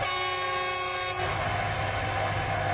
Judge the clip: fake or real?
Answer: real